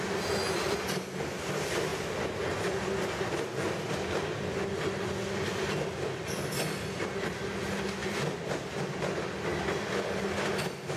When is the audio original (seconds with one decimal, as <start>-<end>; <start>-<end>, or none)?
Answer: 0.0-11.0